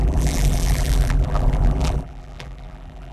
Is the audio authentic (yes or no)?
no